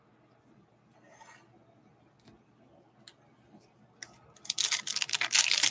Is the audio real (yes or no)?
yes